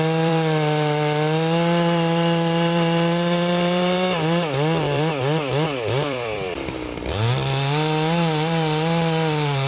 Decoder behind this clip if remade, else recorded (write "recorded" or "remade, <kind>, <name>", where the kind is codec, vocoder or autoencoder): remade, vocoder, BigVGAN v2